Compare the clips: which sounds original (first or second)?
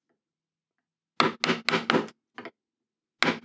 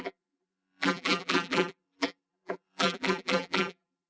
first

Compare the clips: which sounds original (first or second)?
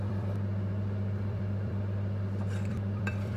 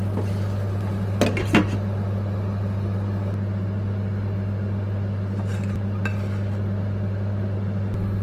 second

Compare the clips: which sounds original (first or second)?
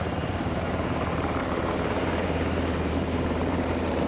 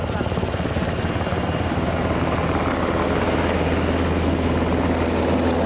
second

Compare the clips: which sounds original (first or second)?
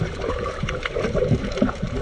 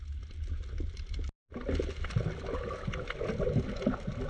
second